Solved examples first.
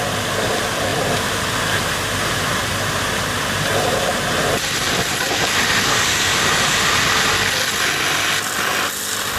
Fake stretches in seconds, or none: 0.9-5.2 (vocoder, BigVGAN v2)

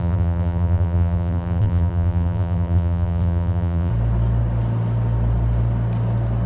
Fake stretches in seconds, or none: 0.0-3.9 (vocoder, BigVGAN v2)

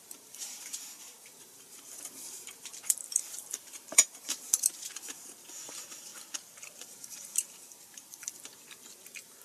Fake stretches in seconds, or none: 0.0-6.1 (vocoder, BigVGAN v2); 7.0-9.4

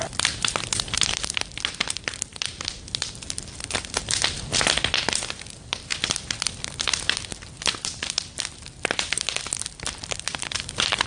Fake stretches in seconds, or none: 0.0-2.3 (vocoder, BigVGAN v2); 2.9-11.1

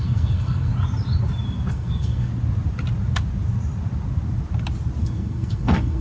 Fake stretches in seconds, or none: 0.0-0.7 (codec, SNAC); 1.7-2.3; 5.0-6.0